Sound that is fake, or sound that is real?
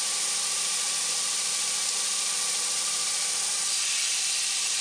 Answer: fake